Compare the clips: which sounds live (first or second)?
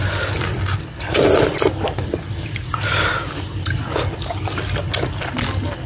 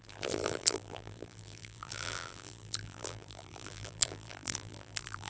first